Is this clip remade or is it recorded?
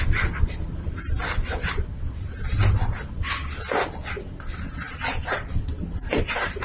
recorded